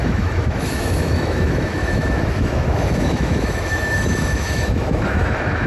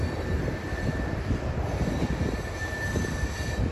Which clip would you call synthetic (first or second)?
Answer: first